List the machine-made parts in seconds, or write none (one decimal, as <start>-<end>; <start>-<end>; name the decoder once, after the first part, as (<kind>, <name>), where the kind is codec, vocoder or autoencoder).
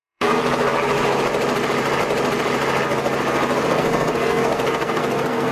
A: 0.0-0.4 (codec, SNAC); 3.7-5.5